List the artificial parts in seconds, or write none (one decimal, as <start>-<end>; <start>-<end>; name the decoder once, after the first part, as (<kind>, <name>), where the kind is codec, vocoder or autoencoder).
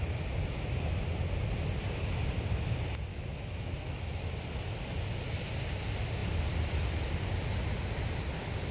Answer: 3.1-4.3 (autoencoder, DAC-VAE)